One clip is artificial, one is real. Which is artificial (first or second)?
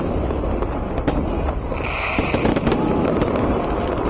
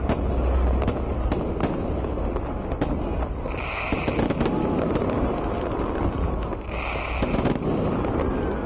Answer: first